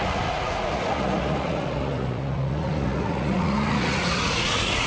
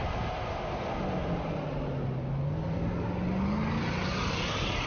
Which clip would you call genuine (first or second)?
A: second